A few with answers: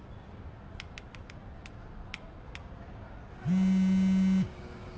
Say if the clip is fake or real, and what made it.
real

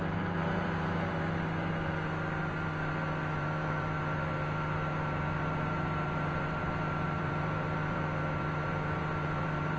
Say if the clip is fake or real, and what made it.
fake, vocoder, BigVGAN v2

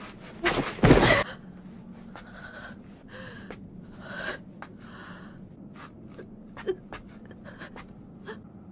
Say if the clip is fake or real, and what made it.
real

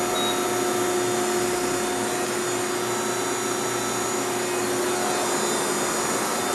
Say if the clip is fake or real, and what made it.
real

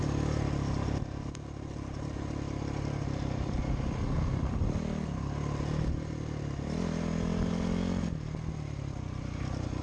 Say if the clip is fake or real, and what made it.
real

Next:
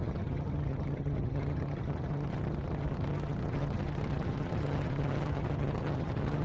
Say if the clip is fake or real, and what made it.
fake, vocoder, HiFi-GAN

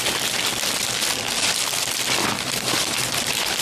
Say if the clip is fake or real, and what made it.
fake, vocoder, BigVGAN v2